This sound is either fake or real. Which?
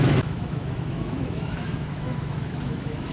fake